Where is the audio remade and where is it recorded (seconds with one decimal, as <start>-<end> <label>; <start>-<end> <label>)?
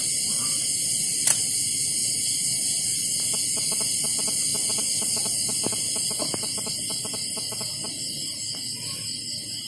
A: 0.0-2.0 recorded; 2.0-2.8 remade; 2.8-9.7 recorded